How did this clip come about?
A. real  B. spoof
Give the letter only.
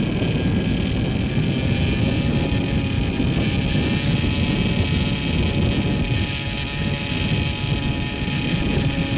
A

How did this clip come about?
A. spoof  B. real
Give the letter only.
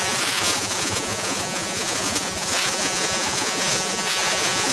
A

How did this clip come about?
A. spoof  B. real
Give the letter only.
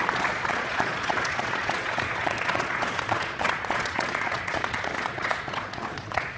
A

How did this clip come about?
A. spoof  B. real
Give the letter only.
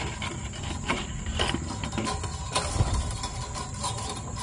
B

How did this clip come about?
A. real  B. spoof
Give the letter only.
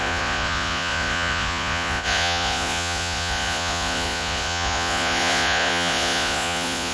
B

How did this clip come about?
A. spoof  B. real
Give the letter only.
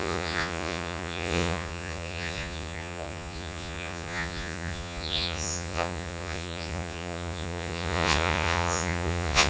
A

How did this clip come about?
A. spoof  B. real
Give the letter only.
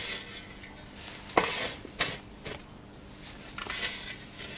B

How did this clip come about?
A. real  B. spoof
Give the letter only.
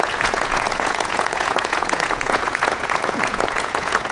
B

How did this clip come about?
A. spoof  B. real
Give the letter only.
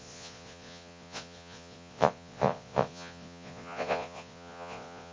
A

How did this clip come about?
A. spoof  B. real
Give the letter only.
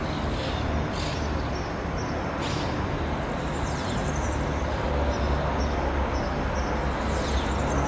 B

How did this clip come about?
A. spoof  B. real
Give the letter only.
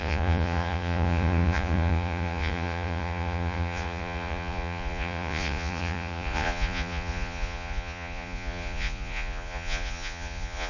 A